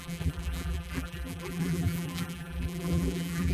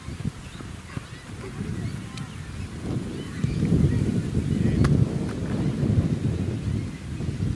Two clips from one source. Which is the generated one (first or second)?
first